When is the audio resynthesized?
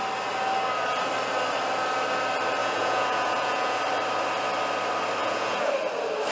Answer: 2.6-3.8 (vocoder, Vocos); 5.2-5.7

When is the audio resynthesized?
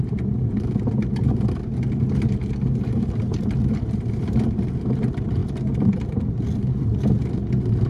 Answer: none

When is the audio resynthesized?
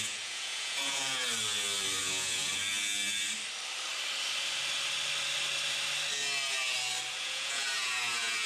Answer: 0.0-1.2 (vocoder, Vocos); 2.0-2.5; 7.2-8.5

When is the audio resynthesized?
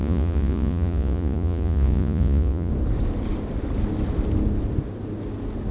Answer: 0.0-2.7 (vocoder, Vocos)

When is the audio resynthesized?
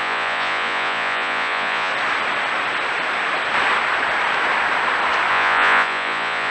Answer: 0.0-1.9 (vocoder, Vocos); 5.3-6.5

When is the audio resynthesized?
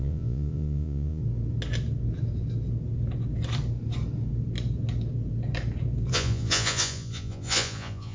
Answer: 0.0-1.2 (vocoder, Vocos); 6.1-8.1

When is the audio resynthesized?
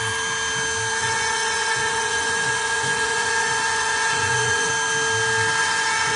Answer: 1.0-4.7 (vocoder, Vocos); 5.6-6.2